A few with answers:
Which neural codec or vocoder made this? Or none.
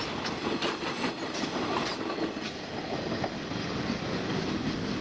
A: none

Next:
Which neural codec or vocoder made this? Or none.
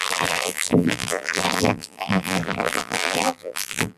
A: vocoder, BigVGAN v2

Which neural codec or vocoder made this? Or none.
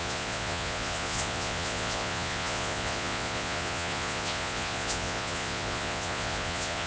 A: vocoder, Vocos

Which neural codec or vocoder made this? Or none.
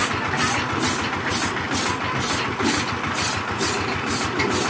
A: none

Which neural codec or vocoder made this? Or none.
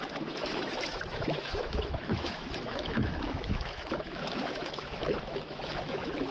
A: autoencoder, DAC-VAE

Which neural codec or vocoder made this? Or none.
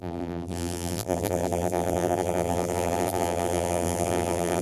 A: vocoder, BigVGAN v2